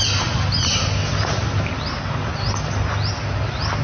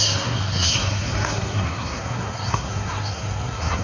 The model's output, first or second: second